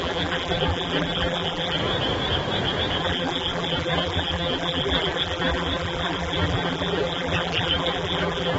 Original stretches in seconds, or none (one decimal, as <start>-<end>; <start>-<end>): 1.8-3.0